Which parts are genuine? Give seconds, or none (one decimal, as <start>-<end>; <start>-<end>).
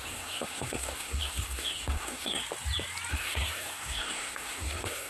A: 2.4-3.1